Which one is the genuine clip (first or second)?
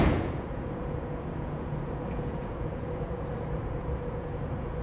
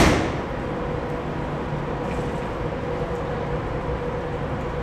second